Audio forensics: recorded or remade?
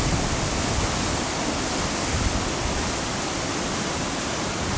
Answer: recorded